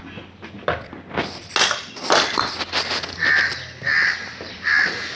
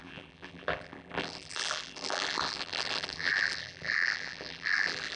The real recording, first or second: first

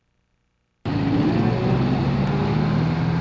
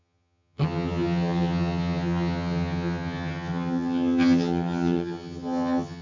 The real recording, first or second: first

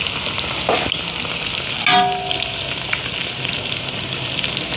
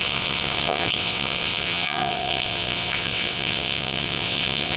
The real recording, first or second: first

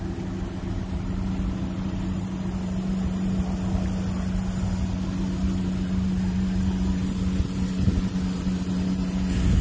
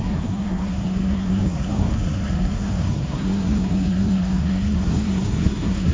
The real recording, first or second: first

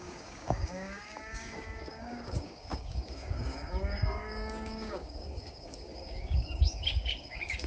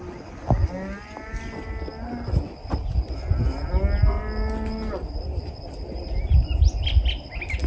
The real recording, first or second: second